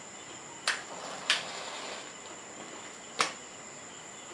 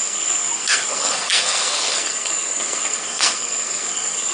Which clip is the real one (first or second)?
first